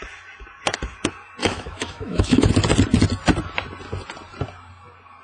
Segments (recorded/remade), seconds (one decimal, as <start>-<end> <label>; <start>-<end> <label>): 0.0-1.4 recorded; 1.4-2.5 remade; 2.5-5.2 recorded